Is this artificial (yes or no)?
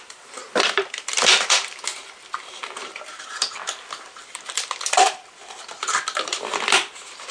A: yes